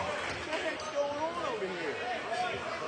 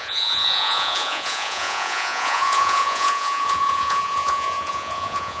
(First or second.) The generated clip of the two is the second